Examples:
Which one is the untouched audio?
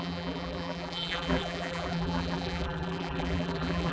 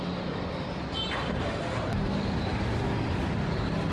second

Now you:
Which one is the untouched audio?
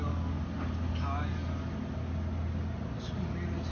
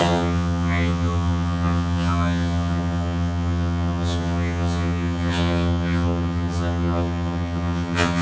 first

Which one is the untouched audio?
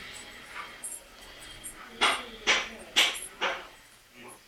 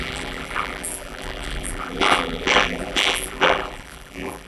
first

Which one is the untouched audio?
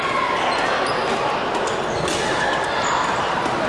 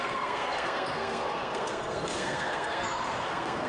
first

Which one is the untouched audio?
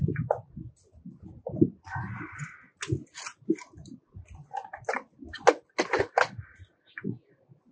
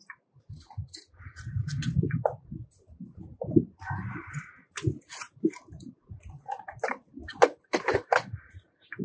first